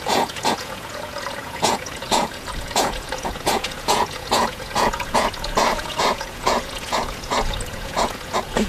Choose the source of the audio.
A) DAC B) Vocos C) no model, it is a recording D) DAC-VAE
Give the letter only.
B